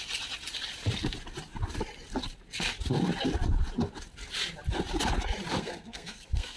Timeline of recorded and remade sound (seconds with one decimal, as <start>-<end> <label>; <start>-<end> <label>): 0.0-5.6 recorded; 5.6-6.6 remade